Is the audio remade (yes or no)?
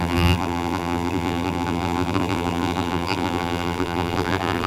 yes